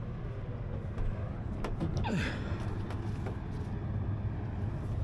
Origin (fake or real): real